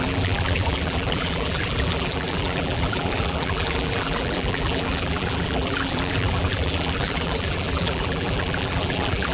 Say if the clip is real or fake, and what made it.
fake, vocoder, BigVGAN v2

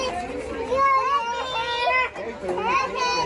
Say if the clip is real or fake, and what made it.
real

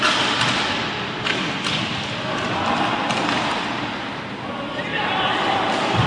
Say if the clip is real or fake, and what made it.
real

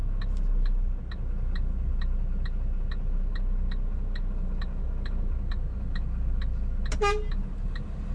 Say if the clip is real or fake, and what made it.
real